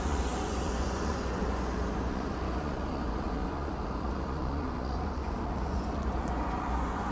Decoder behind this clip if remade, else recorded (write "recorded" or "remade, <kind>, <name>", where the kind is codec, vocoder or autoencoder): remade, vocoder, Vocos